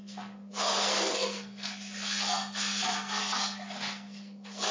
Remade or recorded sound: remade